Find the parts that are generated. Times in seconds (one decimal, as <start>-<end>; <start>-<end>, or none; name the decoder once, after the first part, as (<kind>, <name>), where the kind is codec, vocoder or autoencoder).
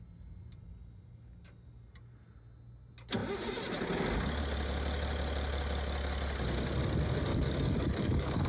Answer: 7.3-8.5 (codec, DAC)